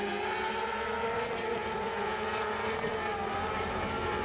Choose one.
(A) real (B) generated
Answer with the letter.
A